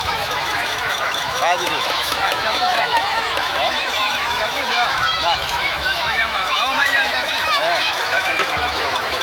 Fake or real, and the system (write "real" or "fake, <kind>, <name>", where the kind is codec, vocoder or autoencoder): fake, autoencoder, DAC-VAE